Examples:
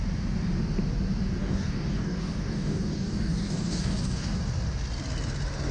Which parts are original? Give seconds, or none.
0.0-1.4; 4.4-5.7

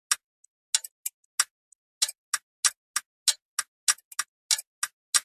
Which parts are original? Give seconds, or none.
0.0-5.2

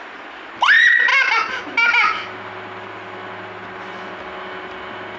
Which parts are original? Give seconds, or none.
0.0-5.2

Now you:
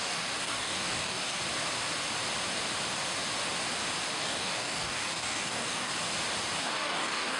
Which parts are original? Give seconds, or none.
1.4-4.1; 5.9-6.6

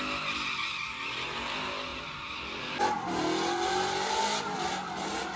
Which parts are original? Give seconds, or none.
0.0-5.4

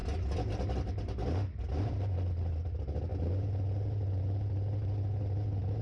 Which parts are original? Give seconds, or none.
0.0-5.8

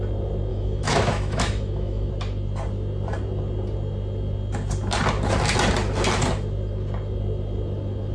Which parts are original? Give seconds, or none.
0.0-0.5; 2.1-8.1